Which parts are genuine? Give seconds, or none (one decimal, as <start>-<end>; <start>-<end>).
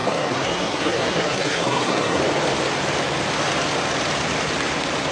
2.2-5.1